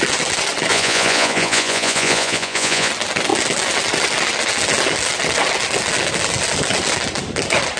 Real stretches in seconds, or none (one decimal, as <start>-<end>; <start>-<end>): 0.0-0.7; 2.9-7.8